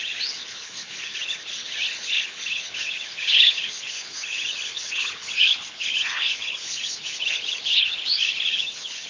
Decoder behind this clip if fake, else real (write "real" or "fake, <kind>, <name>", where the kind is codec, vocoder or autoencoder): fake, codec, HILCodec